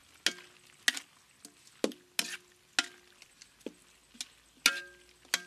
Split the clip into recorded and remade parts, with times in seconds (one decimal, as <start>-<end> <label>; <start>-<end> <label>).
0.0-5.5 recorded